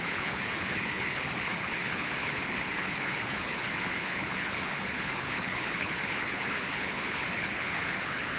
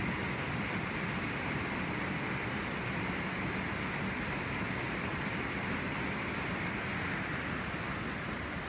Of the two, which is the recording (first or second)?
second